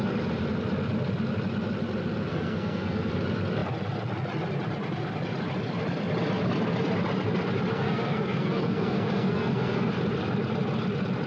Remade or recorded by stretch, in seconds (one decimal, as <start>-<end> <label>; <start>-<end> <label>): 0.0-2.3 recorded; 2.3-3.1 remade; 3.1-7.7 recorded; 7.7-9.9 remade; 9.9-11.3 recorded